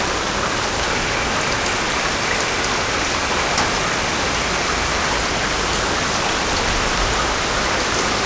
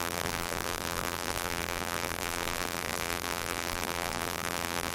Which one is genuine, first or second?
first